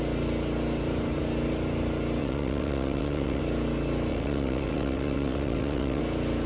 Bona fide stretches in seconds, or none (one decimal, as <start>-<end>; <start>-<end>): 0.0-2.2; 3.4-4.1; 6.0-6.5